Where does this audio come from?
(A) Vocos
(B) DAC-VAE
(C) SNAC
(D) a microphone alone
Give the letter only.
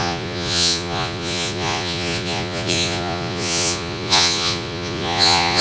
A